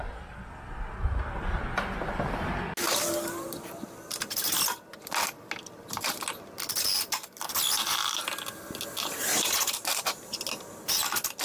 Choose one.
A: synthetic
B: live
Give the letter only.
B